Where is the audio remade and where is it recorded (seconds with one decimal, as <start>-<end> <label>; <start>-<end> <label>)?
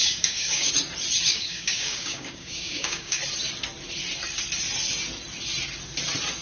0.0-0.7 remade; 0.7-1.3 recorded; 1.3-3.2 remade; 3.2-6.4 recorded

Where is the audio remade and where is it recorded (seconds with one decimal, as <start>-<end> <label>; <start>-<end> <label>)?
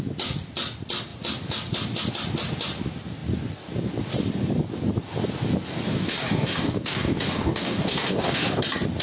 0.0-5.9 recorded; 5.9-8.6 remade; 8.6-9.0 recorded